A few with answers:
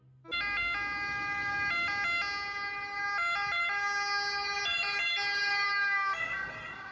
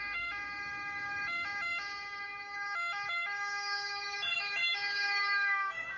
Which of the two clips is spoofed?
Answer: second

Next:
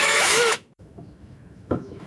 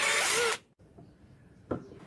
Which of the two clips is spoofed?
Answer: first